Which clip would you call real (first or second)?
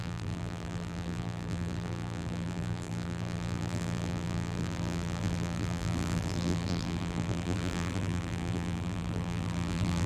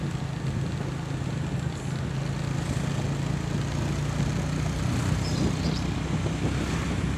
second